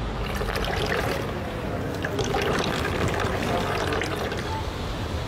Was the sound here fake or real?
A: real